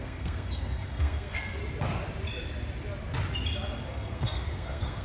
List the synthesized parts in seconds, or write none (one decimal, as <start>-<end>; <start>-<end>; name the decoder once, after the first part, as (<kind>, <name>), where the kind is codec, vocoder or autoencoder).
0.0-1.6 (codec, SNAC); 3.9-5.0